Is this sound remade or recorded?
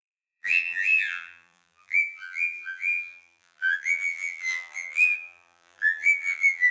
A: remade